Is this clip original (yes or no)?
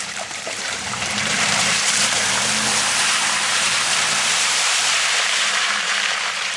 no